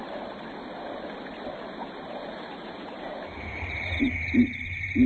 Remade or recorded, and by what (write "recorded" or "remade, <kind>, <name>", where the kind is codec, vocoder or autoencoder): recorded